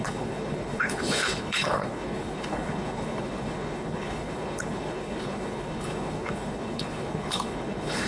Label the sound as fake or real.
fake